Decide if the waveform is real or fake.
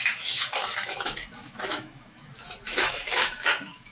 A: fake